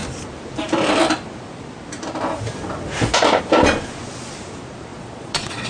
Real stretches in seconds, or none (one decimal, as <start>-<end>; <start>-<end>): 0.0-4.9

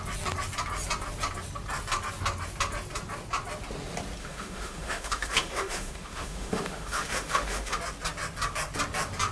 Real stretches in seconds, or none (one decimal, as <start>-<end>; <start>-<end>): 0.0-4.2; 7.8-9.3

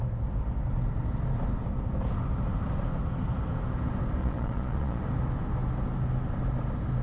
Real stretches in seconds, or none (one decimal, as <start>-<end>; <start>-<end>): 0.0-4.2; 5.0-7.0